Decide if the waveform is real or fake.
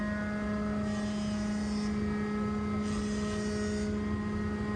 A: real